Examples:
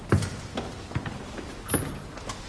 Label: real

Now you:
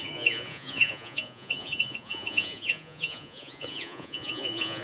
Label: fake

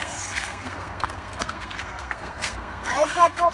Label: fake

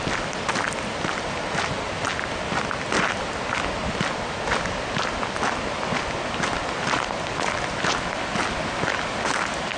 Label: real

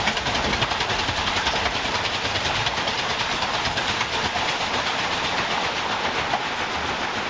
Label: real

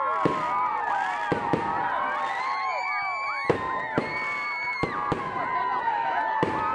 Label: real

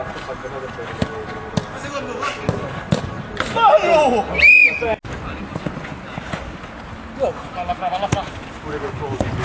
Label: real